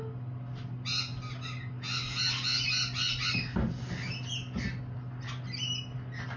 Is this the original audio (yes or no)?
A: yes